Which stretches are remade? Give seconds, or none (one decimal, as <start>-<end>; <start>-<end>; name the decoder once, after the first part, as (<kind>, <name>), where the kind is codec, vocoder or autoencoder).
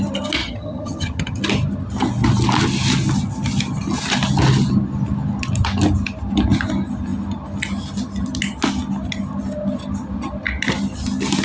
0.4-1.4 (vocoder, HiFi-GAN)